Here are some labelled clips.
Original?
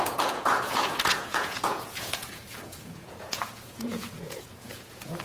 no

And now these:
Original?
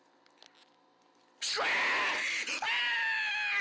yes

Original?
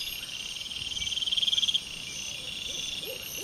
yes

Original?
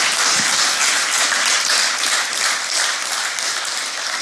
yes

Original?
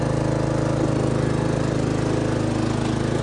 yes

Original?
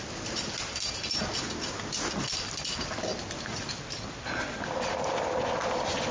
yes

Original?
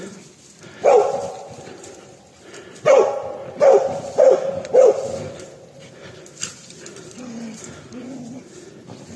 yes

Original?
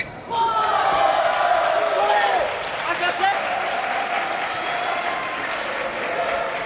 yes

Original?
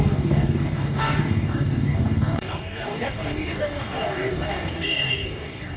no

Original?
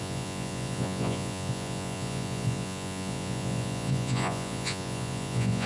no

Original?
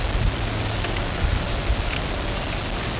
yes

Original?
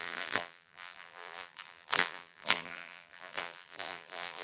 no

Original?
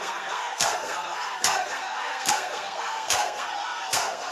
no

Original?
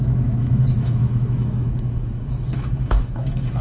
no